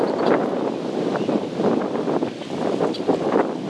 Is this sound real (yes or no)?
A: yes